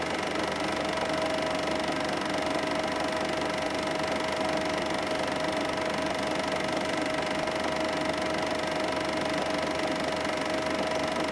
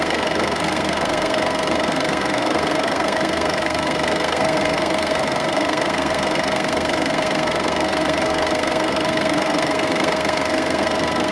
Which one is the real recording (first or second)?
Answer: first